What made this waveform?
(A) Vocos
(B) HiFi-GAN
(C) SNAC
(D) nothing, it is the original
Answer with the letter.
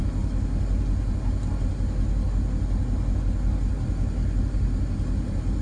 D